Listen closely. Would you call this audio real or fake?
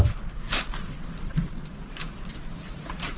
real